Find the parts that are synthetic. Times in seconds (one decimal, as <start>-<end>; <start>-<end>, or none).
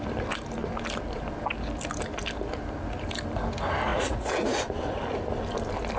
3.9-4.6